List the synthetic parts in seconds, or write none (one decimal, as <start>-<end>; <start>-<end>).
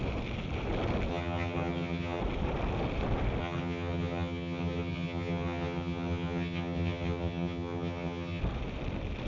1.1-2.2; 3.4-8.4